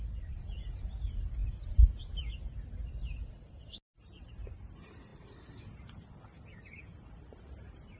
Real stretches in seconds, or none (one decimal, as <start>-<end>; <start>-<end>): 0.0-8.0